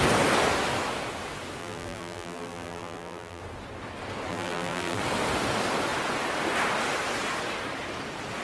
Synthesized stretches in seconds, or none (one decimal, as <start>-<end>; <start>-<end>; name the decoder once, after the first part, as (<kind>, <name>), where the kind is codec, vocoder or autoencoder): 1.6-3.4 (vocoder, BigVGAN v2); 4.3-5.0